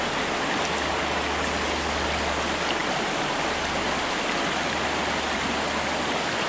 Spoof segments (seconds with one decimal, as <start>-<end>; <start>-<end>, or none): none